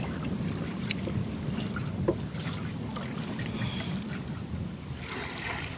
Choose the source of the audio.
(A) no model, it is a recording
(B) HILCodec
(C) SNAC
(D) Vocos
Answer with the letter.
A